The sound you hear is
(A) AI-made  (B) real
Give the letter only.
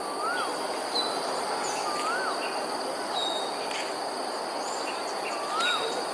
B